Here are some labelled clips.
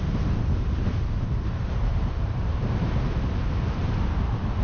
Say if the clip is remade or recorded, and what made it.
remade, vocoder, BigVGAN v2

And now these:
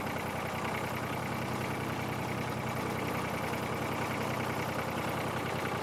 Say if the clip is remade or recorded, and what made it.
recorded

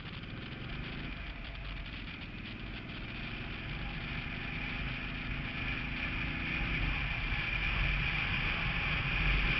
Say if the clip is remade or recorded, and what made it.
recorded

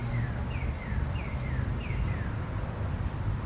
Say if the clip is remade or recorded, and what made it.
remade, vocoder, BigVGAN v2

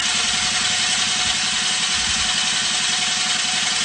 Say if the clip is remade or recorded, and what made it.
recorded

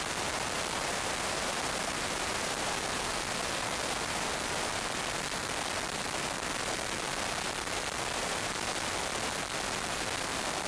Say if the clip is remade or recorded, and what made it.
remade, vocoder, BigVGAN v2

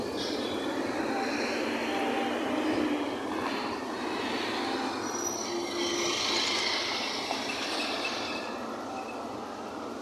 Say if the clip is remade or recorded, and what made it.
recorded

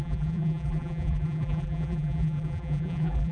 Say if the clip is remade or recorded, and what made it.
remade, vocoder, BigVGAN v2